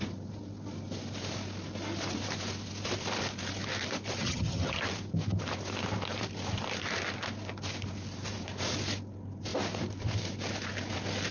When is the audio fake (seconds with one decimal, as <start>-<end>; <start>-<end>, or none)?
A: 4.2-4.8